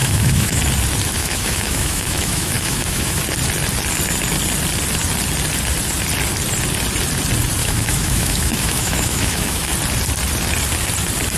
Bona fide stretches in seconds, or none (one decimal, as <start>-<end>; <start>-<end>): 0.6-1.2; 3.2-7.6; 9.7-11.4